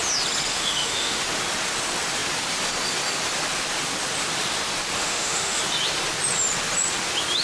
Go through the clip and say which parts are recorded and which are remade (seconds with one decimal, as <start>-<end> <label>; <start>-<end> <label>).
0.0-0.5 recorded; 0.5-1.2 remade; 1.2-5.0 recorded; 5.0-5.6 remade; 5.6-7.4 recorded